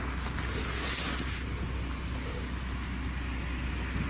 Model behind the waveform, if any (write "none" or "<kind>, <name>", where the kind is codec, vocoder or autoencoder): none